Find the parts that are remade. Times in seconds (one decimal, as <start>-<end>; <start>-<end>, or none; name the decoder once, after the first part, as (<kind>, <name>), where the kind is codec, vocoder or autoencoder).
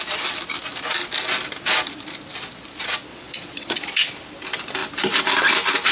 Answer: 3.1-4.0 (vocoder, Vocos)